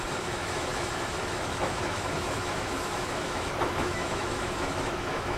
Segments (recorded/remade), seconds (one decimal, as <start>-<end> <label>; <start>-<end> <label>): 0.0-5.4 remade